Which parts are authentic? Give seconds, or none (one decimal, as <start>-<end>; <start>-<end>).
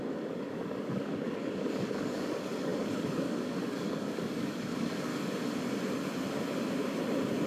5.1-7.5